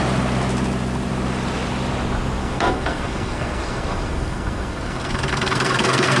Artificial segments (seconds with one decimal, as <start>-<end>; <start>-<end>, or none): 2.4-6.2